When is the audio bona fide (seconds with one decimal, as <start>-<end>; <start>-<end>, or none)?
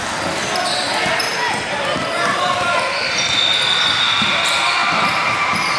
0.0-5.8